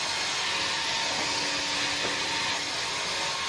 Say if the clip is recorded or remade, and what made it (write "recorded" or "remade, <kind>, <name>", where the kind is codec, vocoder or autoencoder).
recorded